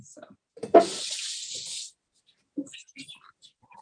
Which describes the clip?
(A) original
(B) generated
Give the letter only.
A